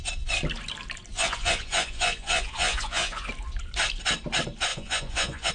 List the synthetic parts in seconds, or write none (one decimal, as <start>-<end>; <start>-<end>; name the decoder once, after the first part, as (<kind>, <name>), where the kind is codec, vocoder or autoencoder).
1.1-3.3 (vocoder, Vocos); 4.7-5.5